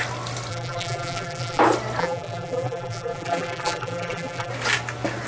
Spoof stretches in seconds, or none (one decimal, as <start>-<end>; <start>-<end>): 0.5-1.6; 2.0-4.5